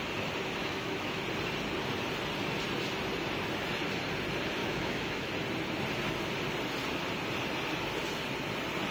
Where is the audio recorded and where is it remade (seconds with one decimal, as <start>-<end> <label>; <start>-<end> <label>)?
0.0-0.6 recorded; 0.6-1.2 remade; 1.2-4.6 recorded; 4.6-5.3 remade; 5.3-8.9 recorded